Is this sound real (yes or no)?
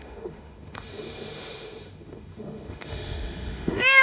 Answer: no